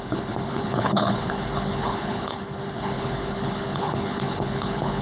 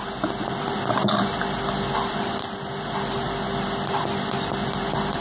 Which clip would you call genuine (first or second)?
second